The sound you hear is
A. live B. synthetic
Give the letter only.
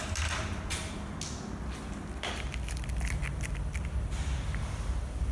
A